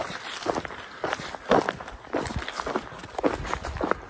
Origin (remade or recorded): recorded